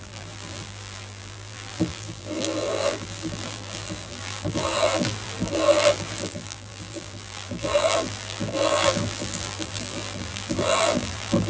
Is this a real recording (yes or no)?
no